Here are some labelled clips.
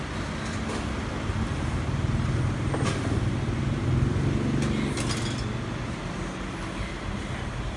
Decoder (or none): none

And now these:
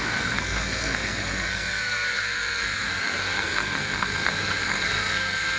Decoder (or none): codec, SNAC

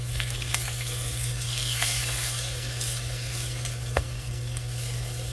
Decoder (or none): codec, SNAC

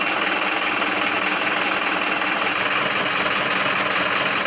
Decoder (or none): none